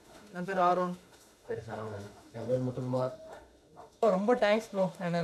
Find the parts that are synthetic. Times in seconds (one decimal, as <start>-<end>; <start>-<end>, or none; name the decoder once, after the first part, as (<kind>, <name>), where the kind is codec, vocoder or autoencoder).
0.0-5.2 (autoencoder, DAC-VAE)